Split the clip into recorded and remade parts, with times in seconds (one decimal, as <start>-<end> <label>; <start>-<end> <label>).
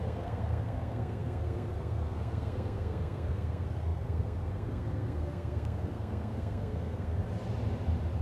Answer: 0.0-7.2 remade; 7.2-8.2 recorded